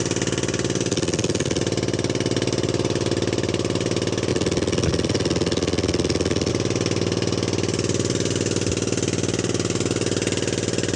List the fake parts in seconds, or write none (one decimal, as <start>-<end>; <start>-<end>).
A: 0.9-1.6; 4.3-6.5

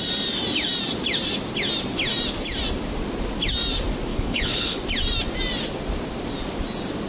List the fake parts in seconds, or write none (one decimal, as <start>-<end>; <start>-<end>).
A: 4.1-4.8

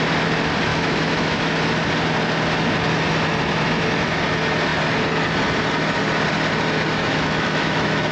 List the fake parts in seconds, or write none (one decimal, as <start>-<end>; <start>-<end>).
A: 0.7-1.5; 7.0-8.1

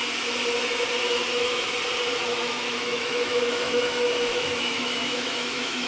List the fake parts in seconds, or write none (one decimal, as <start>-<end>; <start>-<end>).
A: 1.1-1.7; 2.3-5.9

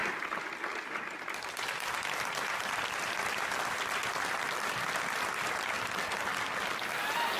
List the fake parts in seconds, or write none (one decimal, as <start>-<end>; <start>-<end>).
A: none

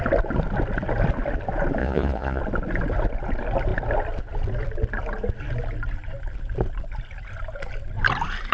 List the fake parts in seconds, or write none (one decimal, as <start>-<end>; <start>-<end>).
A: 1.8-2.4